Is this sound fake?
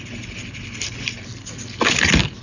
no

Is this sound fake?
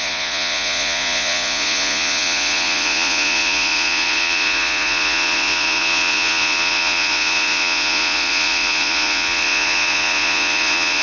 yes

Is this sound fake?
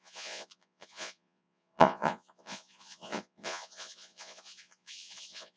yes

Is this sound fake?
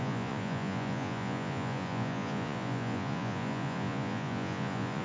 yes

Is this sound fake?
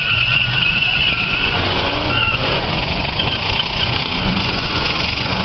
yes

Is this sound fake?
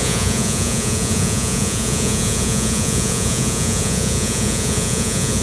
yes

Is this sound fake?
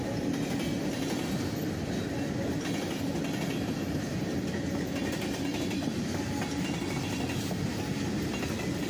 no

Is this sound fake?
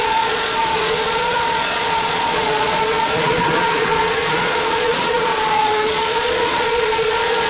yes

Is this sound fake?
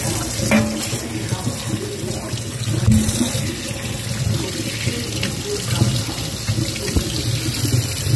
no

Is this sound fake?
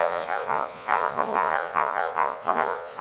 yes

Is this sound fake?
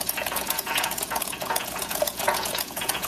yes